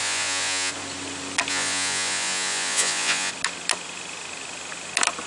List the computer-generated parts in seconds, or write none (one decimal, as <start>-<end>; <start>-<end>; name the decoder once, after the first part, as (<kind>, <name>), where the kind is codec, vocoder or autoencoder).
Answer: 0.0-0.7 (vocoder, Vocos); 1.5-3.3